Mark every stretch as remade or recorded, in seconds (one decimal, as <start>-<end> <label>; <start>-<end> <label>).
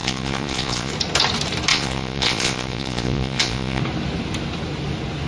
0.0-0.9 remade; 0.9-1.7 recorded; 1.7-3.8 remade; 3.8-5.3 recorded